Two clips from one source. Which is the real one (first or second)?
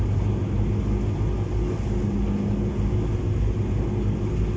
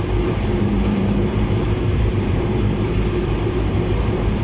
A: first